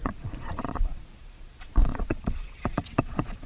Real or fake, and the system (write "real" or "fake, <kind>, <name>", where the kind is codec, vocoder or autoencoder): fake, vocoder, Vocos